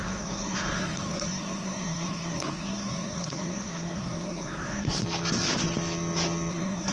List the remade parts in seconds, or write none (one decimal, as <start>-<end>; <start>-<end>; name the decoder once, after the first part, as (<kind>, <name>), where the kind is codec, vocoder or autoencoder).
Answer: 0.0-5.0 (codec, SNAC); 6.5-6.9